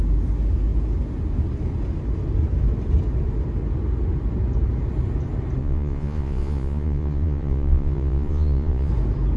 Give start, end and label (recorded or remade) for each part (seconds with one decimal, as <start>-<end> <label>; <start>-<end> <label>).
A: 0.0-5.6 recorded; 5.6-8.9 remade; 8.9-9.4 recorded

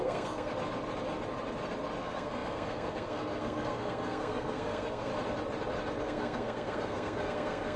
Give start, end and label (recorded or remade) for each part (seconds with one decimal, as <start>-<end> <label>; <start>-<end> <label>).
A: 0.0-0.5 remade; 0.5-2.0 recorded; 2.0-5.1 remade; 5.1-6.0 recorded; 6.0-7.8 remade

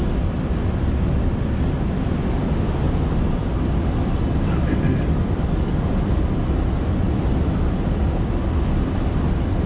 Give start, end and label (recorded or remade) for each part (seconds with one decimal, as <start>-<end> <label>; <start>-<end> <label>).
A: 0.0-9.7 recorded